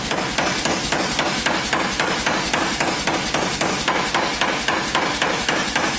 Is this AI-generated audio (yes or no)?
no